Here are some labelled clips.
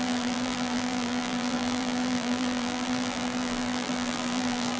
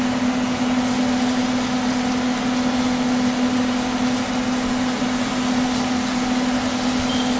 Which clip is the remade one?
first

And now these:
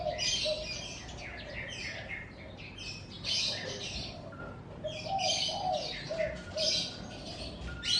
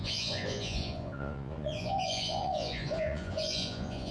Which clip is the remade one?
second